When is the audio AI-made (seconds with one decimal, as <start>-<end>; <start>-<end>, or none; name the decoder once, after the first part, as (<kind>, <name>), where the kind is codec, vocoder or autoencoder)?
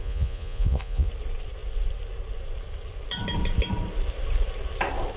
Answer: 0.0-1.1 (vocoder, Vocos)